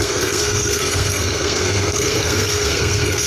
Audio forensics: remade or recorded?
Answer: remade